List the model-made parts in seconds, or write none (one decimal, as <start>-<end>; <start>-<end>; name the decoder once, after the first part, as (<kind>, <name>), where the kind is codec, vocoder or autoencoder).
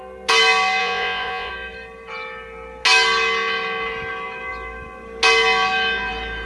0.8-1.5 (vocoder, Vocos)